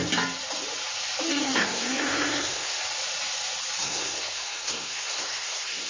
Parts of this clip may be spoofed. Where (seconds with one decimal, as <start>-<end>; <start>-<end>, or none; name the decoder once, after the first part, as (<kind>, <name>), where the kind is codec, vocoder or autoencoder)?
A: 1.3-2.8 (codec, SNAC); 3.8-5.9